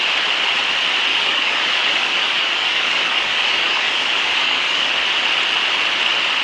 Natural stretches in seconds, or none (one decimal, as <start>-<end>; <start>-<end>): 0.0-1.1; 4.9-6.4